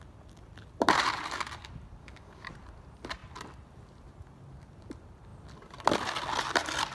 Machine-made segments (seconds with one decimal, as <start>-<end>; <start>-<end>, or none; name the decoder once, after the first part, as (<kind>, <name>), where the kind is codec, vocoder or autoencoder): 2.0-2.5 (codec, DAC)